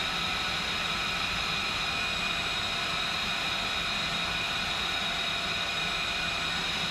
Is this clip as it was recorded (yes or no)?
yes